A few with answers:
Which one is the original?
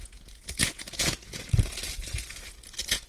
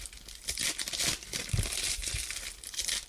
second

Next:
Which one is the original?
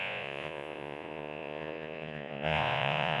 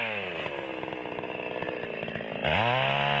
second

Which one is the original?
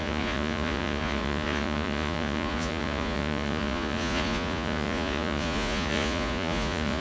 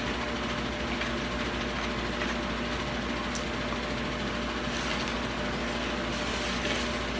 second